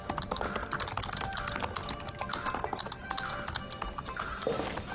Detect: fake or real real